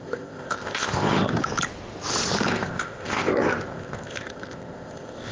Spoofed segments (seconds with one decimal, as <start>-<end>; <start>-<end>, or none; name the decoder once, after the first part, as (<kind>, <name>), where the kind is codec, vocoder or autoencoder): 0.0-1.4 (codec, ZipCodec); 2.5-5.3